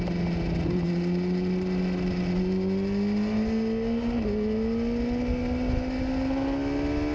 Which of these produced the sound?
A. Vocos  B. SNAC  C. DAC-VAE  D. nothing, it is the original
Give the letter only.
D